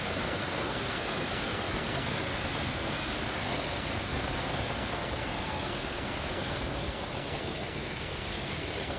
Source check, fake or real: fake